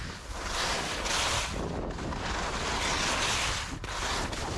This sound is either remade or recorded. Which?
recorded